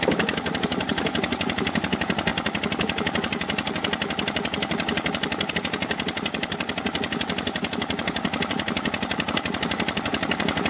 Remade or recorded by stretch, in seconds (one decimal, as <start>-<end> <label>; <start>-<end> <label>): 0.0-10.7 recorded